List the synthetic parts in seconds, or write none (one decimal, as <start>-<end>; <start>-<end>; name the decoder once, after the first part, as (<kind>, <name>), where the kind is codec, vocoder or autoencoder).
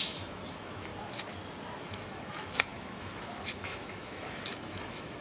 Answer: 0.0-0.9 (autoencoder, DAC-VAE); 1.8-5.2